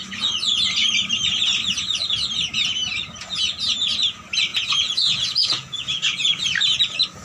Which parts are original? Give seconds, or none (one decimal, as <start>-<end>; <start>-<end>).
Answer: 0.0-4.5; 6.4-7.2